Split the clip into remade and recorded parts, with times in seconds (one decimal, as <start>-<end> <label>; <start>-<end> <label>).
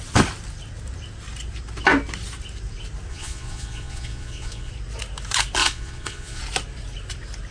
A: 0.0-3.1 recorded; 3.1-4.7 remade; 4.7-5.6 recorded; 5.6-6.4 remade; 6.4-7.5 recorded